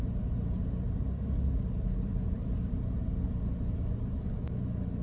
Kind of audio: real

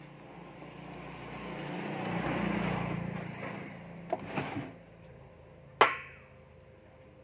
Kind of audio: real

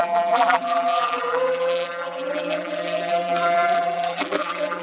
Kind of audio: fake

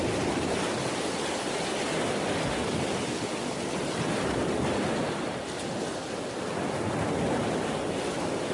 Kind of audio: real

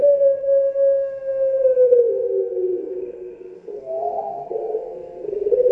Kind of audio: fake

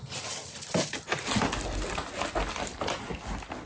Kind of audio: real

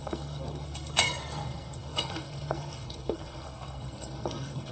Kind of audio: fake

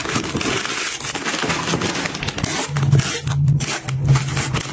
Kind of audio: real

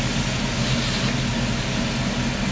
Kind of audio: real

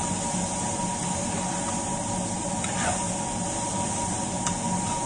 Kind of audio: real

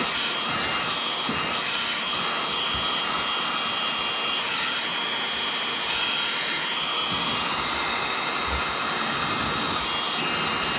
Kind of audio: real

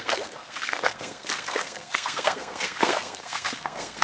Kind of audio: fake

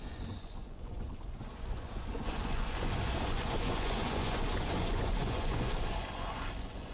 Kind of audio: fake